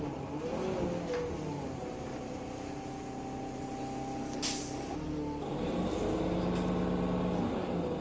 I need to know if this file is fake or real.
real